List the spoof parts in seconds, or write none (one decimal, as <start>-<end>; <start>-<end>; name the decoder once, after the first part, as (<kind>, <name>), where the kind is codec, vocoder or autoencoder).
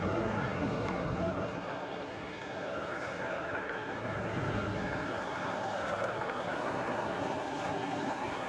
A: 0.0-8.5 (codec, SNAC)